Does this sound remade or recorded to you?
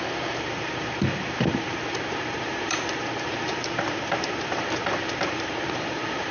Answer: remade